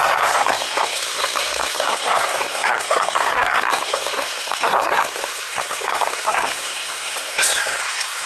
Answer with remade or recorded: remade